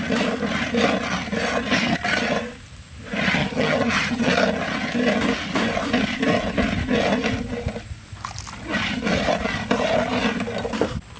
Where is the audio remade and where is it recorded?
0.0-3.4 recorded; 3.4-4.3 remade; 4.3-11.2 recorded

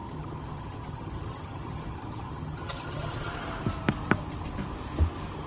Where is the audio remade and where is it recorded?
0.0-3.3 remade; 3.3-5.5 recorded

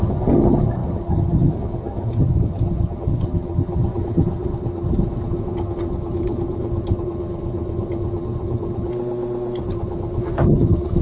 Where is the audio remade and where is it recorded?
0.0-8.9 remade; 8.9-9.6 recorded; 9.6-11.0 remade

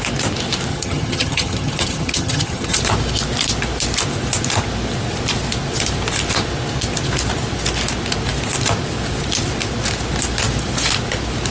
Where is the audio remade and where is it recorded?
0.0-0.7 recorded; 0.7-2.8 remade; 2.8-11.5 recorded

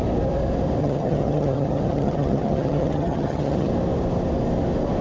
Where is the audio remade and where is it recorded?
0.0-0.8 recorded; 0.8-3.7 remade; 3.7-5.0 recorded

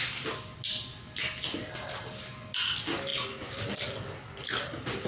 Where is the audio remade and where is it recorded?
0.0-5.1 recorded

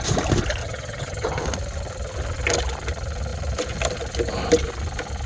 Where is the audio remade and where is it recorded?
0.0-0.6 recorded; 0.6-1.4 remade; 1.4-5.3 recorded